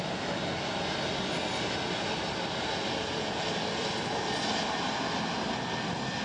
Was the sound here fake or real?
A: real